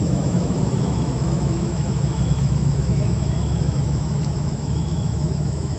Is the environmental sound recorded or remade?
remade